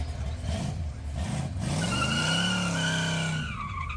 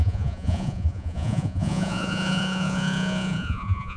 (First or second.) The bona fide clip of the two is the first